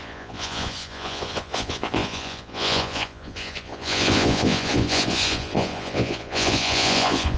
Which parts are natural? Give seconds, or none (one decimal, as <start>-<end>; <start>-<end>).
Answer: none